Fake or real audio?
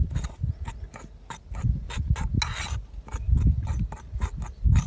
real